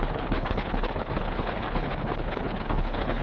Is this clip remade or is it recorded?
remade